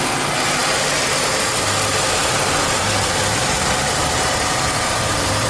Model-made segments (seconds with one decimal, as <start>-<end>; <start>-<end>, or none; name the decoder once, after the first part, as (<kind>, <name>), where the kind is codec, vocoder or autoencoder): none